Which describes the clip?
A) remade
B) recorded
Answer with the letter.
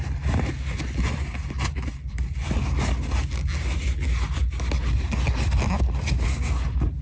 B